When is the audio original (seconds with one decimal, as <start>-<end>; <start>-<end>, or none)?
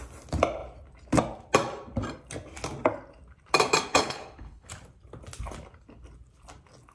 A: 0.0-3.9; 4.7-6.9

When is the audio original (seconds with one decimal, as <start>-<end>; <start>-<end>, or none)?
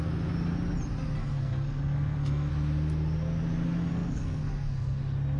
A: 0.0-1.2; 2.5-3.9; 5.0-5.4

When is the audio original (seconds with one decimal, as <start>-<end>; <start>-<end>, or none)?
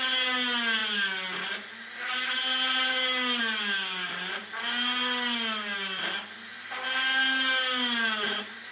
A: 0.0-8.7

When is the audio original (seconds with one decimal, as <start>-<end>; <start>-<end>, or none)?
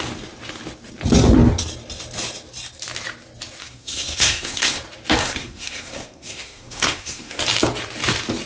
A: 0.0-3.6; 4.8-5.2; 7.4-8.5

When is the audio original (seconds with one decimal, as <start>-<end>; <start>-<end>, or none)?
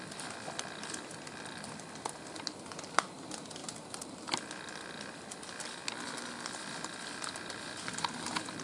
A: 0.0-8.6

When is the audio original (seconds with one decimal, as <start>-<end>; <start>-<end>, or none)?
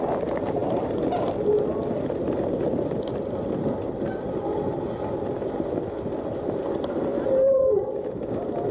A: 0.0-8.7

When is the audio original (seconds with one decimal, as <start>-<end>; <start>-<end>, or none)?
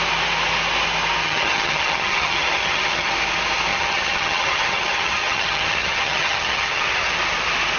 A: 0.0-1.2; 3.1-3.7; 7.1-7.8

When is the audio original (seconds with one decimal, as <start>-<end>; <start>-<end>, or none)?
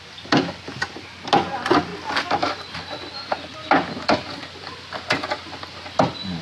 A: 0.0-6.4